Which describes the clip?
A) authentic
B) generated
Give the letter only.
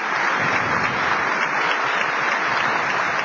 A